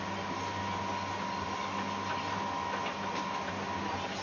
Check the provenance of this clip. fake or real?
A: real